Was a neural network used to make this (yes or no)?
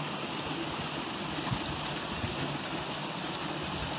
no